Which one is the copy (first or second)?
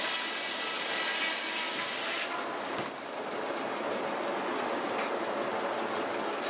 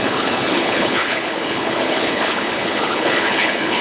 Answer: second